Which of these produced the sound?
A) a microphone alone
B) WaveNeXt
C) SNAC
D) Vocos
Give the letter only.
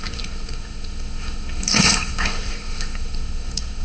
C